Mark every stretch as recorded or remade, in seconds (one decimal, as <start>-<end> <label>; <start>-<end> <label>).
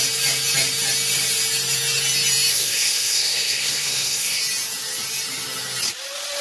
0.0-2.5 recorded; 2.5-4.4 remade; 4.4-6.4 recorded